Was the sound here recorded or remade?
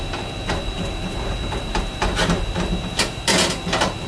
remade